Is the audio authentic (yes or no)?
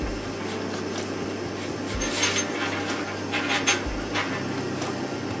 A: yes